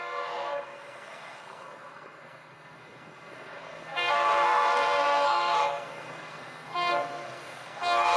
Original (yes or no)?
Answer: no